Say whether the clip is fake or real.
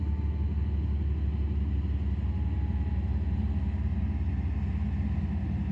real